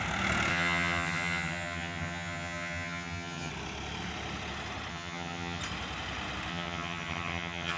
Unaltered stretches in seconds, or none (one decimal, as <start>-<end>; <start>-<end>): 0.0-0.5; 3.5-4.9; 5.6-6.5